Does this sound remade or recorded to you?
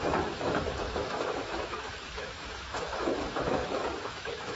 remade